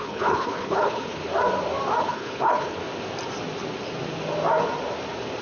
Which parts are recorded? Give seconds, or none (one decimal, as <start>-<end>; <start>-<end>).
1.2-2.0; 2.8-5.4